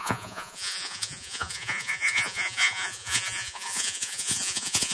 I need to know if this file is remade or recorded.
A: remade